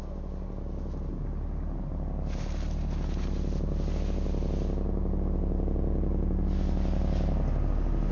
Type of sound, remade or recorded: recorded